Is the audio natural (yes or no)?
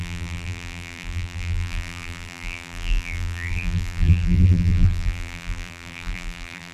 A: no